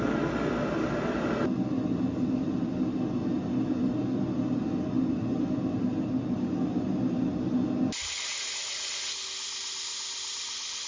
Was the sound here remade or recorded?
recorded